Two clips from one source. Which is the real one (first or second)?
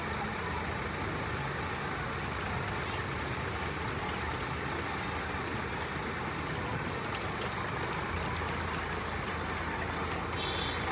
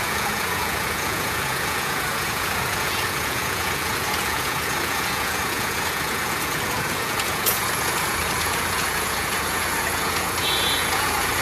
first